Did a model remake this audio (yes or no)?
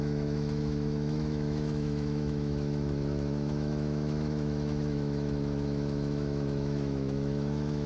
yes